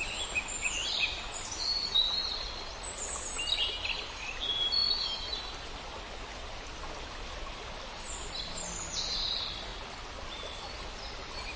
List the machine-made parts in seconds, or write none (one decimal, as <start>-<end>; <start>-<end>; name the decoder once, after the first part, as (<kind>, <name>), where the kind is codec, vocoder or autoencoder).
none